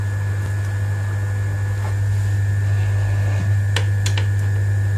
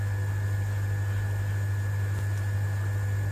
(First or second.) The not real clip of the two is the second